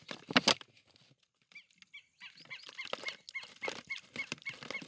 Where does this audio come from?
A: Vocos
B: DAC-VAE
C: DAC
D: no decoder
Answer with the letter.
D